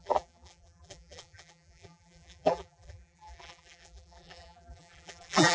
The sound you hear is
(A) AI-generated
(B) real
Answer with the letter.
A